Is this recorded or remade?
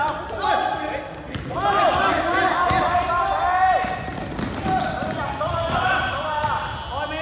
recorded